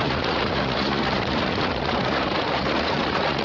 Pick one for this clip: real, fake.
fake